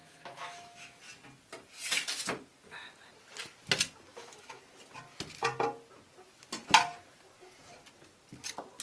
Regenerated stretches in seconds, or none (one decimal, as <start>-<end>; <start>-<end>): 0.0-1.0; 4.1-4.6

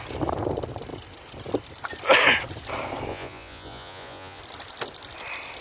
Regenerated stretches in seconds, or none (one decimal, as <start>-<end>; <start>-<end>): 3.1-4.4

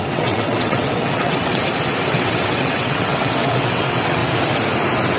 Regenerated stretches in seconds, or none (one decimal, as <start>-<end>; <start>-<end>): 0.0-1.6; 2.1-4.2